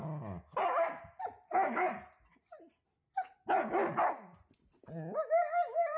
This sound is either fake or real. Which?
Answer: real